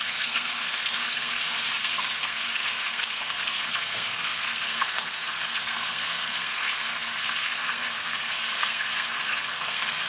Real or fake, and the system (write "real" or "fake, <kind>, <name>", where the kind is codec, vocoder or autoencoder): fake, codec, SNAC